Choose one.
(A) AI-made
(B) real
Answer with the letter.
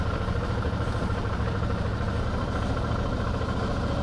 A